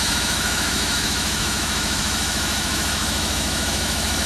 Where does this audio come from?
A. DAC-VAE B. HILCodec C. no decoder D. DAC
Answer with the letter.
A